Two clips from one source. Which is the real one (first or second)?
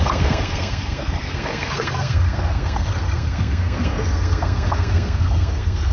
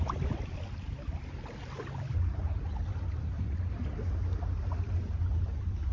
second